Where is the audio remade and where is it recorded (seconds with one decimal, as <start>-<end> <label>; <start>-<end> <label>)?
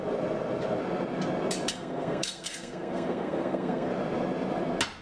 0.0-1.7 recorded; 1.7-3.9 remade; 3.9-5.0 recorded